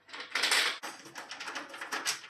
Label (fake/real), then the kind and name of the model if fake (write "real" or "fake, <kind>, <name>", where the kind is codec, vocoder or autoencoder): real